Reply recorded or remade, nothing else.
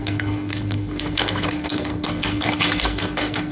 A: remade